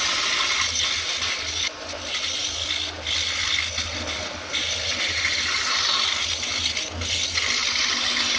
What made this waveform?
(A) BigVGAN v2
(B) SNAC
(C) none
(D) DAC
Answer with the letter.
C